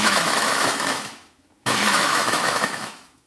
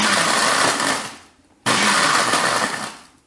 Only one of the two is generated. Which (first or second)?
first